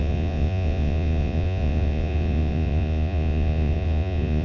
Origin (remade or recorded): remade